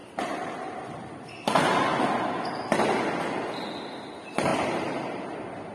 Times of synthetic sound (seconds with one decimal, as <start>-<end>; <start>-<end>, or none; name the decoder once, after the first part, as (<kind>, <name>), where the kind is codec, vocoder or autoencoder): 0.0-1.3 (vocoder, BigVGAN v2); 4.5-5.2

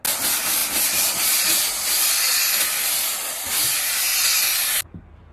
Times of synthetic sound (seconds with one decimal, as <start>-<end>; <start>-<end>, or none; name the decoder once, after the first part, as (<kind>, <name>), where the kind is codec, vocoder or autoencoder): none

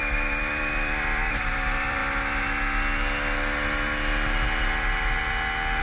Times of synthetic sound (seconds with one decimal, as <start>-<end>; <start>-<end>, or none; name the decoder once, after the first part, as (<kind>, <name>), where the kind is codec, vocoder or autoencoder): 0.0-2.0 (vocoder, BigVGAN v2)

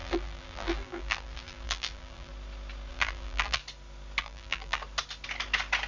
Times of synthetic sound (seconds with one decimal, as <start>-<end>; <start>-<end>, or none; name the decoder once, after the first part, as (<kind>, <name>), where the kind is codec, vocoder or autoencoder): 0.0-2.3 (vocoder, BigVGAN v2); 2.9-3.6; 4.2-4.8

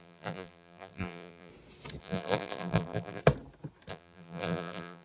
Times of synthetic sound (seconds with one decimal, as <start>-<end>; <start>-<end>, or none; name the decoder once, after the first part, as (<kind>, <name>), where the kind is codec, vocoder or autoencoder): 0.0-1.5 (vocoder, BigVGAN v2); 2.0-3.2; 3.9-5.0

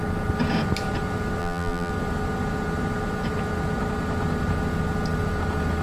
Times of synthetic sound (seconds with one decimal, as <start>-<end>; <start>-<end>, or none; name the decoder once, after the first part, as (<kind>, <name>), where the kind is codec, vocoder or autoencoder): 1.4-1.9 (vocoder, BigVGAN v2)

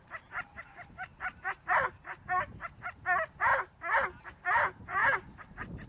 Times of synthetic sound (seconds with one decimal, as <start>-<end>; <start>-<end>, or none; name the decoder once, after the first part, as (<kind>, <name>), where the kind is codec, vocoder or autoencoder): 0.0-3.5 (vocoder, BigVGAN v2); 4.2-5.0

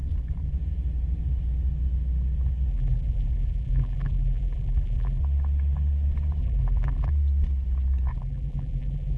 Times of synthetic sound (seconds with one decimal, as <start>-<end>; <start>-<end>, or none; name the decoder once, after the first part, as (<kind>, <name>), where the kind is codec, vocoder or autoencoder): 2.7-5.2 (vocoder, BigVGAN v2); 6.4-7.1; 8.1-9.2